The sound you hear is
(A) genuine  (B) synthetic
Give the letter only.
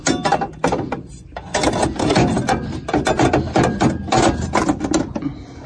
A